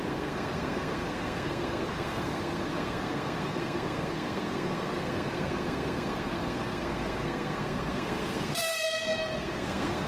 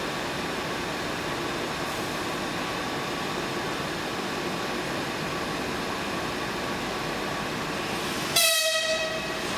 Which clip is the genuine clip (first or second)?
second